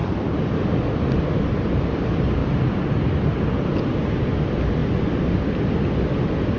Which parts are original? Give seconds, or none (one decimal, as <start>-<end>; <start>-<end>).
1.4-6.6